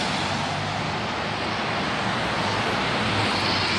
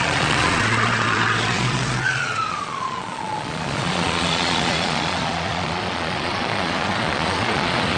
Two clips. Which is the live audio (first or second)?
first